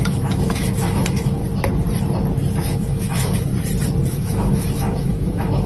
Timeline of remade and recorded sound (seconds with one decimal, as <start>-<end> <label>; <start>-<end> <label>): 0.0-1.4 remade; 1.4-2.6 recorded; 2.6-3.5 remade; 3.5-4.1 recorded; 4.1-5.7 remade